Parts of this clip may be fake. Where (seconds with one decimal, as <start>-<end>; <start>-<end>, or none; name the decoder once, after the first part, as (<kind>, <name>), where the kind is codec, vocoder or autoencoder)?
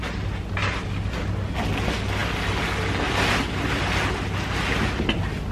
none